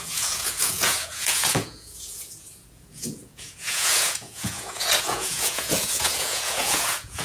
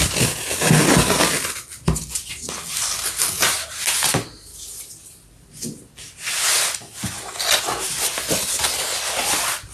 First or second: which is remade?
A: first